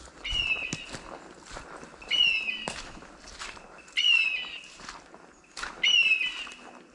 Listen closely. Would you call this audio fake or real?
real